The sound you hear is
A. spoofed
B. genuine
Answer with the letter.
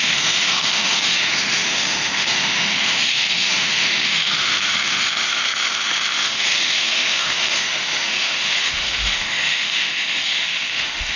A